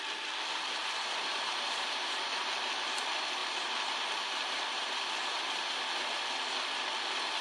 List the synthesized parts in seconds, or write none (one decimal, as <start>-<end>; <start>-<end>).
1.3-2.3; 3.4-5.1

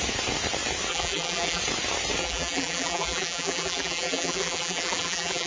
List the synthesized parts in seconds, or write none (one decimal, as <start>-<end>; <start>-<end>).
0.9-1.6; 2.2-5.5

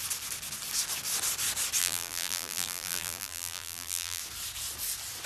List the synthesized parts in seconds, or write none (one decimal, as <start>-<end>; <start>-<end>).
1.8-4.2

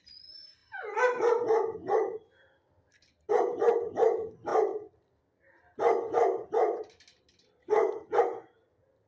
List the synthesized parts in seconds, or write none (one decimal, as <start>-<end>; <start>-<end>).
0.0-0.6; 3.3-4.5; 8.2-9.1

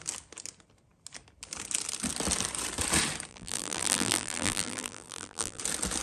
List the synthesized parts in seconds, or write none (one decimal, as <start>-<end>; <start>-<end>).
3.3-5.6

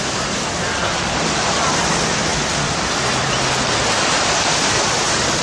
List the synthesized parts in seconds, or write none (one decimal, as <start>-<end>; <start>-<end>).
none